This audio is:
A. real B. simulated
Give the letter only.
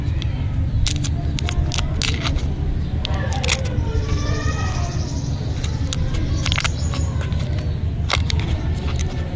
A